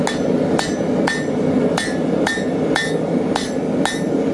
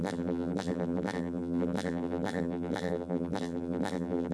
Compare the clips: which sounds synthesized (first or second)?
second